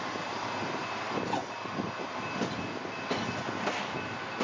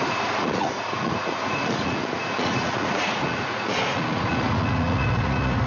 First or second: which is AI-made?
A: second